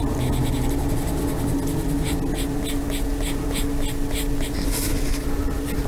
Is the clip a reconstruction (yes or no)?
no